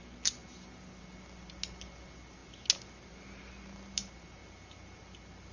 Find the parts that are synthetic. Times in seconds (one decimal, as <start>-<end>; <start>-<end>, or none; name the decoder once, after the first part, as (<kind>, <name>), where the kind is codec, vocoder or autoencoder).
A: none